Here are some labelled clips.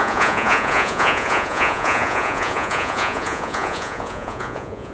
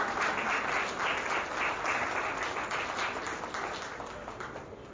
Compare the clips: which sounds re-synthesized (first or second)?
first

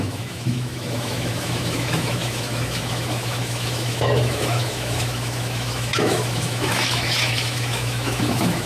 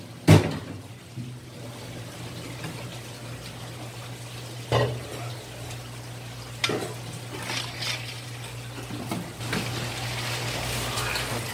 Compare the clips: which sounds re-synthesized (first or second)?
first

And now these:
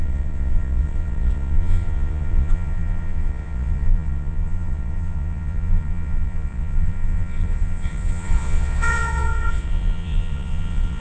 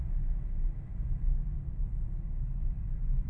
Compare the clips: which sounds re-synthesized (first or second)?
first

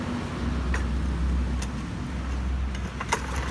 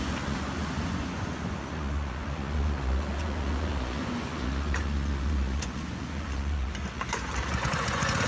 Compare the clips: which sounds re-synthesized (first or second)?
second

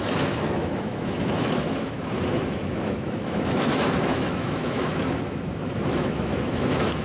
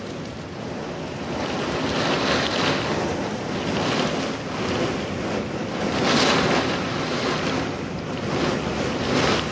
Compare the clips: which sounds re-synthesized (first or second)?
first